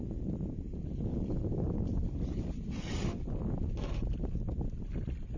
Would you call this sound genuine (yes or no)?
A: yes